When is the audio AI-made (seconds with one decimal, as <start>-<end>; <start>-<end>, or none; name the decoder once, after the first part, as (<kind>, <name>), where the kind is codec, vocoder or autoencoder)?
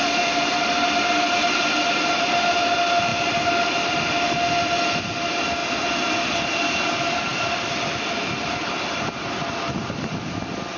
none